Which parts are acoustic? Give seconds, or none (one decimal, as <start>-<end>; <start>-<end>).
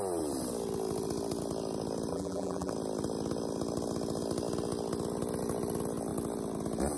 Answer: 0.0-2.1; 2.7-7.0